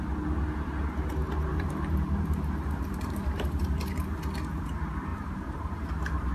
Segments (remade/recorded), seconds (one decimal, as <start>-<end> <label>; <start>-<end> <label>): 0.0-1.5 recorded; 1.5-3.9 remade; 3.9-5.1 recorded; 5.1-6.3 remade